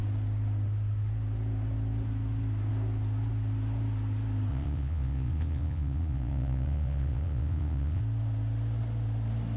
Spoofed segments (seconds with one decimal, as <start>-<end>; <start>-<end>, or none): 4.5-8.0